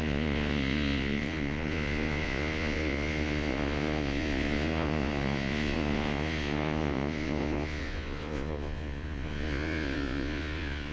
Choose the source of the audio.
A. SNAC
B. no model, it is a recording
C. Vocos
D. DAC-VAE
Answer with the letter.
C